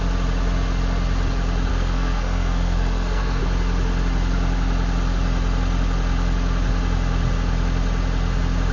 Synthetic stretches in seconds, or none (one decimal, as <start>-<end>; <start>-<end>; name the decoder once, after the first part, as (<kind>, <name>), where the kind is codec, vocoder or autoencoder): 1.7-3.4 (codec, SNAC)